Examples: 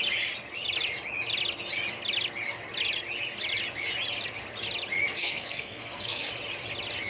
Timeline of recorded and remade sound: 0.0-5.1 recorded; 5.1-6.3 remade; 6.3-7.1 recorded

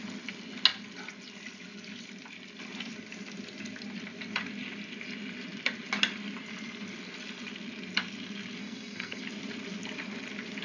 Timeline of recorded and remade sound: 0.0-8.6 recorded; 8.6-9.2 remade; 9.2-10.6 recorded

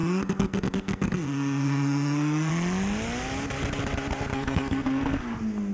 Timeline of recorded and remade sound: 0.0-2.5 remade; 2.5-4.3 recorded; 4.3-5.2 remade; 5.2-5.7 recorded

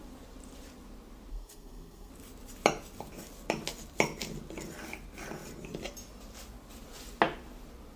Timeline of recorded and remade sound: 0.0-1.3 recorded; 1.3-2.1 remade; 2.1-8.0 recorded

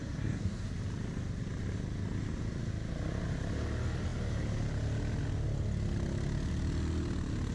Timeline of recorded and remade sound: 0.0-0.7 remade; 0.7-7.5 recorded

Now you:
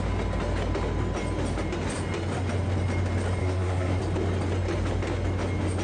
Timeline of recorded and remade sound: 0.0-3.4 recorded; 3.4-4.0 remade; 4.0-5.8 recorded

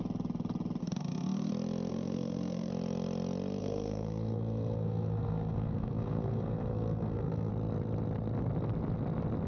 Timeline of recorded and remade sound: 0.0-0.8 recorded; 0.8-1.5 remade; 1.5-1.9 recorded; 1.9-2.7 remade; 2.7-3.6 recorded; 3.6-7.5 remade; 7.5-9.5 recorded